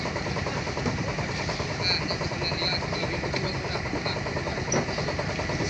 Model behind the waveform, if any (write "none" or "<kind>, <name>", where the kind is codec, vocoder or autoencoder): none